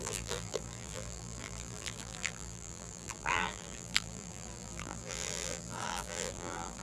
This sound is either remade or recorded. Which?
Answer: remade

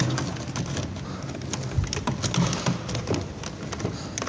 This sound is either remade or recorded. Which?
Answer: recorded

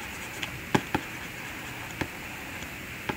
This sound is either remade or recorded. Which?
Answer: recorded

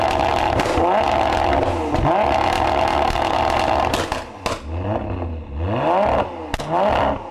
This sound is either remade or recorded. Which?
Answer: recorded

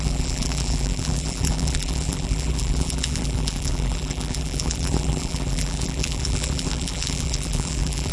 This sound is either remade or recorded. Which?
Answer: remade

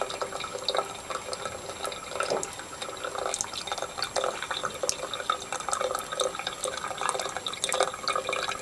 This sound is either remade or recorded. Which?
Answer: recorded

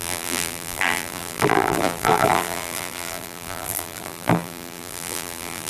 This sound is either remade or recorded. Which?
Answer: remade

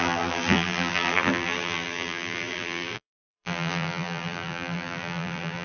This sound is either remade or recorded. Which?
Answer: remade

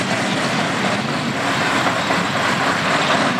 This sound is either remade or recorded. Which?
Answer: remade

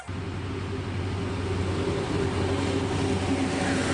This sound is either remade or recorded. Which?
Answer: recorded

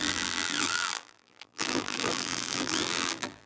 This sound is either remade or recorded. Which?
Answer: remade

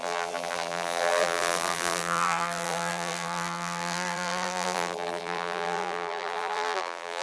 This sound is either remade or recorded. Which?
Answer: remade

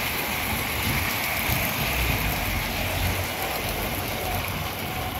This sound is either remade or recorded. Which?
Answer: recorded